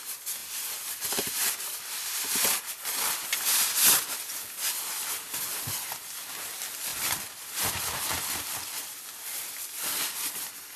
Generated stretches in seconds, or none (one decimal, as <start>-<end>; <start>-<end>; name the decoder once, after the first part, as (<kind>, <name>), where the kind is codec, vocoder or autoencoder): none

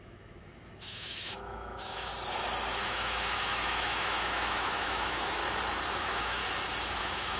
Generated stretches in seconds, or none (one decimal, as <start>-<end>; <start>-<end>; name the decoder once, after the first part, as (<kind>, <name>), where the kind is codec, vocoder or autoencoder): 0.0-2.1 (autoencoder, DAC-VAE); 2.8-5.4; 5.9-6.4; 7.0-7.4

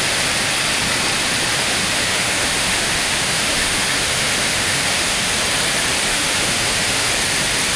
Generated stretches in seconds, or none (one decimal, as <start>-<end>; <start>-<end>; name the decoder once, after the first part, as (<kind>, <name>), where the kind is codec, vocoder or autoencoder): 1.5-5.3 (autoencoder, DAC-VAE); 6.1-7.1